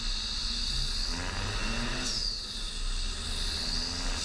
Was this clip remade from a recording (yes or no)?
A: no